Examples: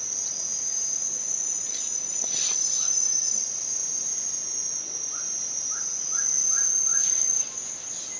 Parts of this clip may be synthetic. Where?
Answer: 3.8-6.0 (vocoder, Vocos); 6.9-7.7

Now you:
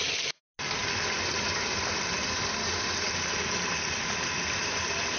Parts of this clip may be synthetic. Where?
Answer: none

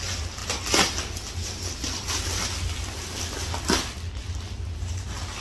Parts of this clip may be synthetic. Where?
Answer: none

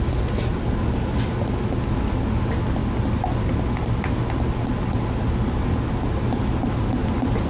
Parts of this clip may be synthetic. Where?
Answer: none

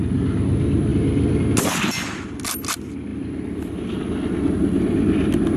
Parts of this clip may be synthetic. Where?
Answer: none

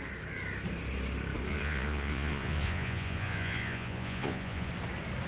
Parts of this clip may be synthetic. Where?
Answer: 1.5-4.7 (vocoder, Vocos)

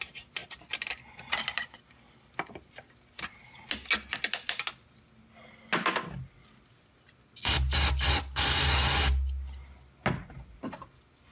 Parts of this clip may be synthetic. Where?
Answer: none